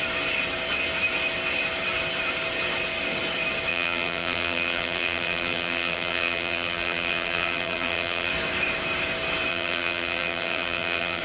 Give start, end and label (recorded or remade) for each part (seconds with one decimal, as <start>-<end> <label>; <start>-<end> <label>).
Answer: 0.0-3.7 recorded; 3.7-8.3 remade; 8.3-9.5 recorded; 9.5-11.2 remade